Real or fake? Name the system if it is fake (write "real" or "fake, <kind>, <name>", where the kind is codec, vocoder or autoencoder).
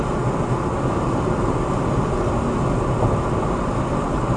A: real